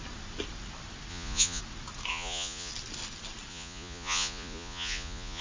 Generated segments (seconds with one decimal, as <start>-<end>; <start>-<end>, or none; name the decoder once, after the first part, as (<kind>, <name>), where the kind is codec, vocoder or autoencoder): 1.1-1.6 (vocoder, Vocos); 2.1-2.7; 3.5-5.4